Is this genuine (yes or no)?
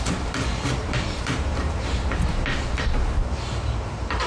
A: no